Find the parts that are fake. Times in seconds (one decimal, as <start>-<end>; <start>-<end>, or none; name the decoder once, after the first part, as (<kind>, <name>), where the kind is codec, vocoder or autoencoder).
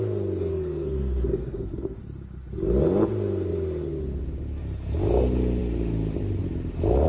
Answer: 0.5-2.0 (codec, SNAC)